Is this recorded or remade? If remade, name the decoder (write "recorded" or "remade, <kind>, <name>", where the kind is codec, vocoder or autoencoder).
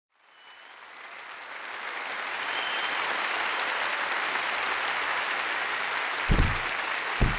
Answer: recorded